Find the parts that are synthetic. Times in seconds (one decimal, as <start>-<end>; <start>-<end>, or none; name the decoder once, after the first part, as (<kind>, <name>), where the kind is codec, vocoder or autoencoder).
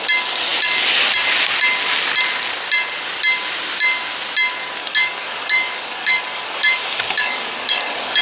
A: 4.8-8.2 (codec, DAC)